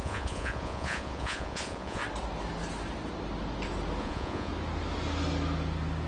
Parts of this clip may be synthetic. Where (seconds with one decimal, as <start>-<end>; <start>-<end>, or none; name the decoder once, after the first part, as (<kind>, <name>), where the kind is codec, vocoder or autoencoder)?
0.0-2.0 (vocoder, Vocos); 4.0-4.5